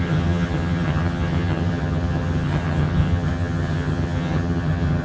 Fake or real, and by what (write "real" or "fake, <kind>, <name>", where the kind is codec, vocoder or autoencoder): fake, vocoder, HiFi-GAN